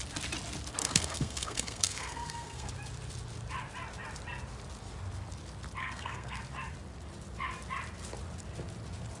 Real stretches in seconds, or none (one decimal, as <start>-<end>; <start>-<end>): 0.0-0.8; 2.7-5.8; 6.4-9.2